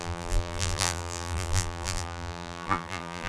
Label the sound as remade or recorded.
remade